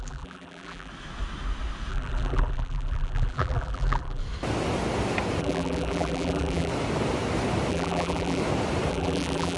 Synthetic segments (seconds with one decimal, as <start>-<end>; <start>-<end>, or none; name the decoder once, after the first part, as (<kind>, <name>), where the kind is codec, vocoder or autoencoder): 0.0-0.9 (vocoder, BigVGAN v2); 1.9-4.2; 5.4-6.7; 7.7-8.4; 8.9-9.6